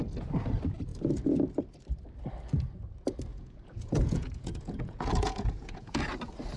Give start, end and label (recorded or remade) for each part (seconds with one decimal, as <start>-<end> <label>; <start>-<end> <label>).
0.0-3.3 recorded; 3.3-6.0 remade; 6.0-6.6 recorded

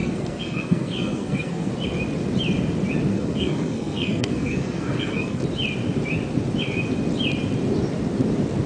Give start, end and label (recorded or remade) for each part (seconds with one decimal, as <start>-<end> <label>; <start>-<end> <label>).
0.0-1.7 remade; 1.7-3.1 recorded; 3.1-5.4 remade; 5.4-8.7 recorded

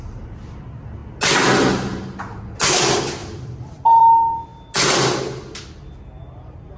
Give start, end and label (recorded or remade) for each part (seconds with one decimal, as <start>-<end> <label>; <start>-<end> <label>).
0.0-6.8 recorded

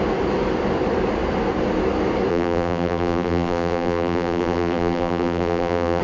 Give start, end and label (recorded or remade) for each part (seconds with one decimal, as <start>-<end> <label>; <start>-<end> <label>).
0.0-2.3 recorded; 2.3-6.0 remade

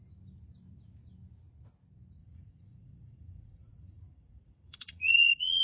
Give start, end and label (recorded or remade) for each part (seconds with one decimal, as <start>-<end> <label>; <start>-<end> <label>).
0.0-2.2 recorded; 2.2-5.6 remade

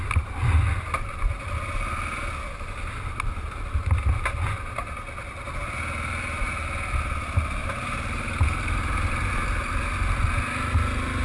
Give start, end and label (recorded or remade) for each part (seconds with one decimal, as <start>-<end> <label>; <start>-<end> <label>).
0.0-7.6 recorded; 7.6-9.3 remade; 9.3-11.2 recorded